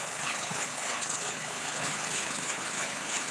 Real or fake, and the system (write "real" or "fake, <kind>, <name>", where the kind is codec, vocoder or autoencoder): fake, codec, HILCodec